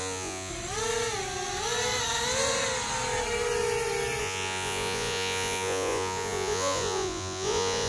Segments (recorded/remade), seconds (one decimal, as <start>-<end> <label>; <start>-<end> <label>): 0.0-0.5 remade; 0.5-4.2 recorded; 4.2-7.9 remade

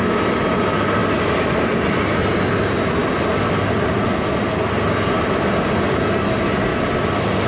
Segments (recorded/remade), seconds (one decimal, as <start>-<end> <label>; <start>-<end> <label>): 0.0-3.0 recorded; 3.0-4.2 remade; 4.2-6.7 recorded; 6.7-7.5 remade

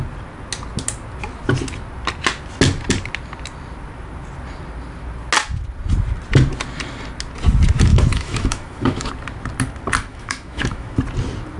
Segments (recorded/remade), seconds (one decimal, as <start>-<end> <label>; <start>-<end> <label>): 0.0-7.9 recorded; 7.9-9.1 remade; 9.1-10.1 recorded; 10.1-11.0 remade; 11.0-11.6 recorded

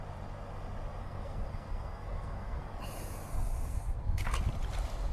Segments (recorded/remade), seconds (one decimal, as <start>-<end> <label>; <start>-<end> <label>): 0.0-1.0 recorded; 1.0-2.8 remade; 2.8-3.3 recorded; 3.3-4.4 remade; 4.4-5.1 recorded

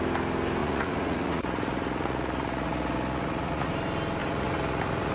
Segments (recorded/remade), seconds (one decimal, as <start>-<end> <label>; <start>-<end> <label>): 0.0-0.6 recorded; 0.6-3.7 remade; 3.7-4.2 recorded; 4.2-5.1 remade

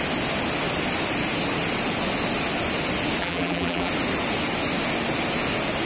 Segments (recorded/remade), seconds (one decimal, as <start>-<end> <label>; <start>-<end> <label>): 0.0-3.2 recorded; 3.2-3.9 remade; 3.9-5.9 recorded

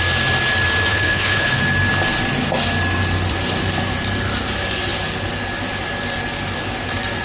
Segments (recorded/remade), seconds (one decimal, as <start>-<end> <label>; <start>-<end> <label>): 0.0-0.9 recorded; 0.9-1.6 remade; 1.6-7.2 recorded

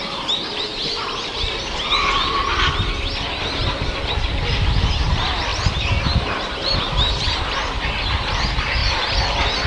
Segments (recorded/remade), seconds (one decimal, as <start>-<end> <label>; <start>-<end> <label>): 0.0-2.2 remade; 2.2-3.9 recorded; 3.9-9.7 remade